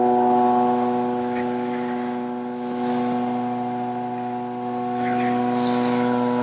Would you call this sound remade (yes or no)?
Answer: no